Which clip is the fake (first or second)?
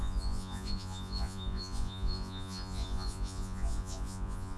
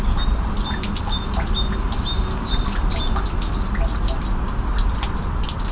first